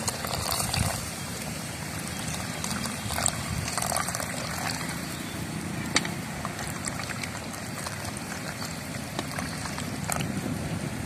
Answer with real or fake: fake